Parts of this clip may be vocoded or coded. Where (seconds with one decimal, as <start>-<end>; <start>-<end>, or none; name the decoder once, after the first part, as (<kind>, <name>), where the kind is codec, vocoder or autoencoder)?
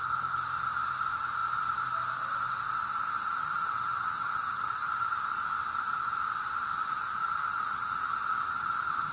3.0-5.2 (vocoder, HiFi-GAN); 6.7-9.1